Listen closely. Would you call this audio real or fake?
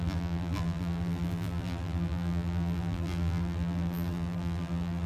fake